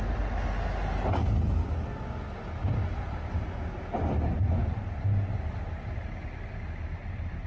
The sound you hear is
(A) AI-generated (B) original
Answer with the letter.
B